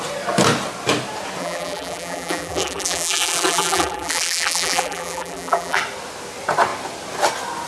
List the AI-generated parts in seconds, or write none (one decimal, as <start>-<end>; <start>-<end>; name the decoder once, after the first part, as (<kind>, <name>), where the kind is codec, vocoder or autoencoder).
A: 1.4-5.8 (vocoder, BigVGAN v2)